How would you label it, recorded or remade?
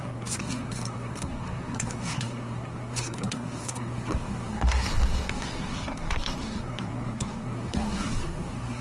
remade